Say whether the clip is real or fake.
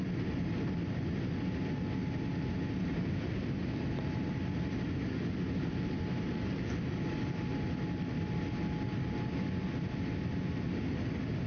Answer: real